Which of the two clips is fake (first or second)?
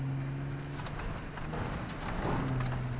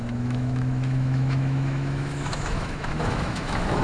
second